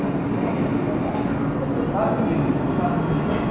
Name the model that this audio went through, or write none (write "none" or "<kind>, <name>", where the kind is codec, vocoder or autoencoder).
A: none